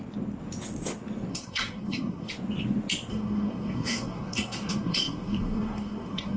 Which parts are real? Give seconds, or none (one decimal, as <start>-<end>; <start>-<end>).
0.0-1.3; 2.3-3.1